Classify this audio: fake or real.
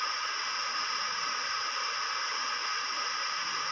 real